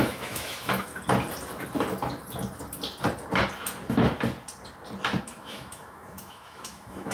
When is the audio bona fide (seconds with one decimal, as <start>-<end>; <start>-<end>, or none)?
0.9-5.2